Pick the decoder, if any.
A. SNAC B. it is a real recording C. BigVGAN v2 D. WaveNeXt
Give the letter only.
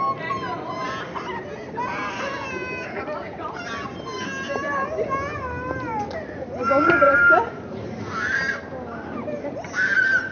B